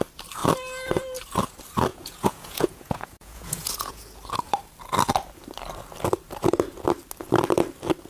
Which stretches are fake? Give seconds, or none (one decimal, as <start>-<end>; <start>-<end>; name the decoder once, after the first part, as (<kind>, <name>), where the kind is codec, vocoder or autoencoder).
1.9-4.0 (vocoder, Vocos)